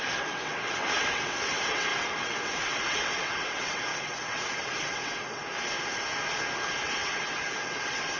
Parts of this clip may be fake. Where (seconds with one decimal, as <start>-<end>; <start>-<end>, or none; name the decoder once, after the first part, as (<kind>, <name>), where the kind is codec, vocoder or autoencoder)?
0.0-5.4 (vocoder, WaveNeXt); 6.8-8.2